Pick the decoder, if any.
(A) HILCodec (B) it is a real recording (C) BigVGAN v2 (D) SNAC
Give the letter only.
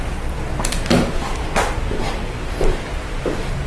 B